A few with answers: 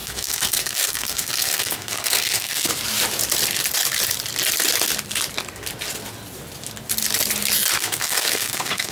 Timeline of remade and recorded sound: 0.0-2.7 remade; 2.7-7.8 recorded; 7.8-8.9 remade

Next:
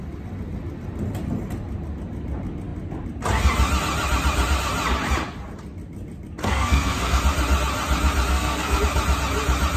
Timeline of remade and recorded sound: 0.0-6.4 recorded; 6.4-7.2 remade; 7.2-8.3 recorded; 8.3-8.8 remade; 8.8-9.8 recorded

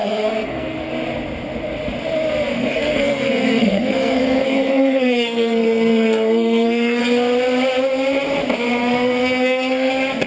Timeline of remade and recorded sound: 0.0-0.9 remade; 0.9-2.5 recorded; 2.5-7.0 remade; 7.0-8.8 recorded; 8.8-9.9 remade; 9.9-10.3 recorded

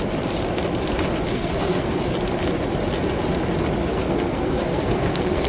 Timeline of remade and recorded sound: 0.0-1.3 recorded; 1.3-2.0 remade; 2.0-3.9 recorded; 3.9-5.5 remade